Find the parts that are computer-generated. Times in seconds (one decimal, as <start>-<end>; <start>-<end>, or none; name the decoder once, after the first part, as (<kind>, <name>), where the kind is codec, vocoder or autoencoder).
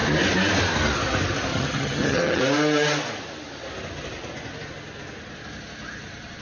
1.5-2.4 (vocoder, HiFi-GAN)